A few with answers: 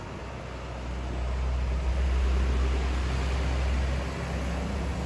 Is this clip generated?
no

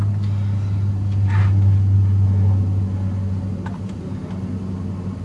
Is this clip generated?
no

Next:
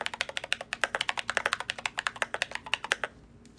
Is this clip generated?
no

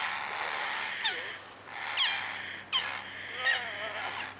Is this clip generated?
no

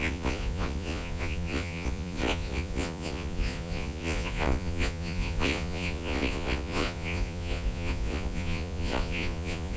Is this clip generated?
yes